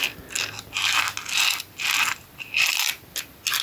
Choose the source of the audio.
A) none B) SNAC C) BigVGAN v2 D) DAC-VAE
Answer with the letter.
A